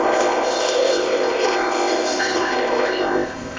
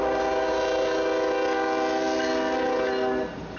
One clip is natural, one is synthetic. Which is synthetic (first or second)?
first